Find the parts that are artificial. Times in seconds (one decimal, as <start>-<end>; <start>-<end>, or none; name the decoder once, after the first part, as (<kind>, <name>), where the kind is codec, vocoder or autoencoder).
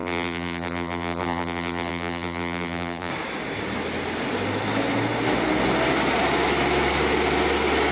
0.0-3.1 (vocoder, BigVGAN v2)